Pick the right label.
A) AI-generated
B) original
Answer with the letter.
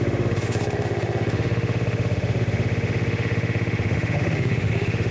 A